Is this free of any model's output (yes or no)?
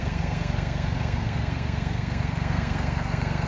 no